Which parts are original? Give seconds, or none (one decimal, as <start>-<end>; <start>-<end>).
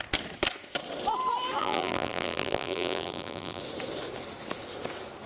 0.0-1.6; 3.6-5.3